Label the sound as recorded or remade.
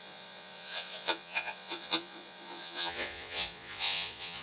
remade